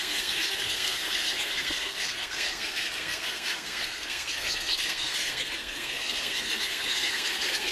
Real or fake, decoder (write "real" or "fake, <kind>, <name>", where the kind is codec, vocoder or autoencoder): fake, codec, SNAC